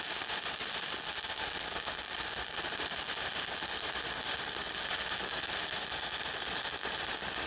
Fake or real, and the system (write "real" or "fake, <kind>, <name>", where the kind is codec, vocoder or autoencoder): real